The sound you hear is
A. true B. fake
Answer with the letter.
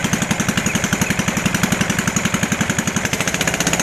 A